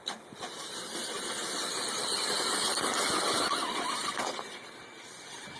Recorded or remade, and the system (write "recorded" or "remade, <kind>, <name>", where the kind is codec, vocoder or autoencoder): recorded